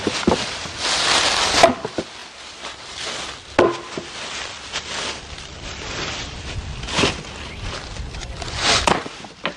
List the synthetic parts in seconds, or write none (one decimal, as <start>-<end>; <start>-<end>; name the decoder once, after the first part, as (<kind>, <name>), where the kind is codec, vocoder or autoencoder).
8.2-8.8 (vocoder, Vocos)